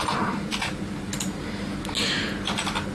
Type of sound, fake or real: real